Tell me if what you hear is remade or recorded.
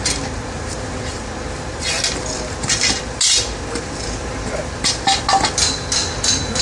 recorded